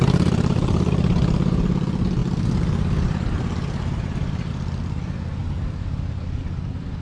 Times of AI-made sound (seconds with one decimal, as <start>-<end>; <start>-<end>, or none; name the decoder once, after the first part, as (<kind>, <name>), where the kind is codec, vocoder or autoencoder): 0.0-1.6 (vocoder, BigVGAN v2); 2.2-4.5; 5.4-7.0